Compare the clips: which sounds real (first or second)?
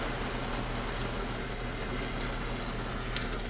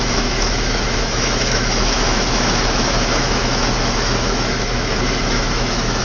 first